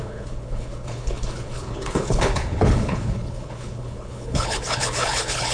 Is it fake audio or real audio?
fake